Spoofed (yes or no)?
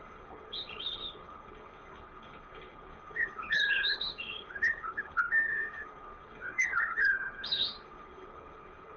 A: yes